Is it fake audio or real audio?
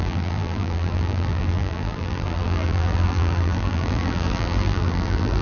fake